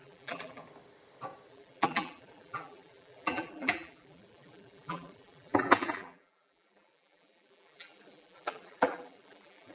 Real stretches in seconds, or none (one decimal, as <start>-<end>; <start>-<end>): 0.6-1.5